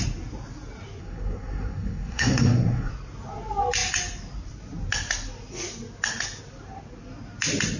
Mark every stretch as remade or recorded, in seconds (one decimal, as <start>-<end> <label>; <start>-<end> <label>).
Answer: 0.0-1.0 recorded; 1.0-2.9 remade; 2.9-7.8 recorded